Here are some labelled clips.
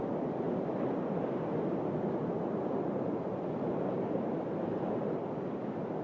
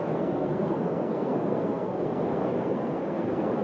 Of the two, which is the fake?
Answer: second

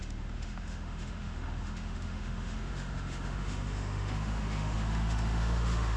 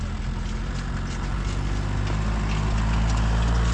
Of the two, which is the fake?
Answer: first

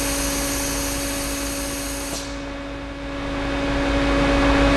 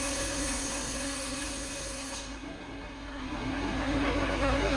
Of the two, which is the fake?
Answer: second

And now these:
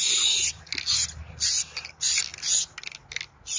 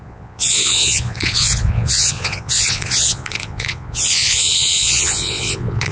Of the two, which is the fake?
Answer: second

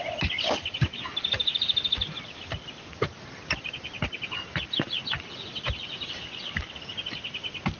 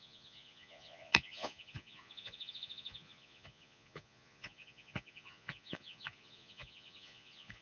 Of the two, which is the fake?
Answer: second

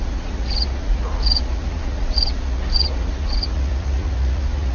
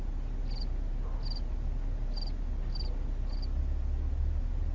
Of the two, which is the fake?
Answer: first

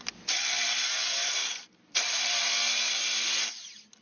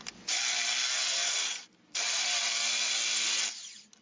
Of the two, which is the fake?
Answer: first